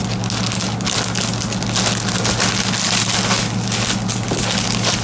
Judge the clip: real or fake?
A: real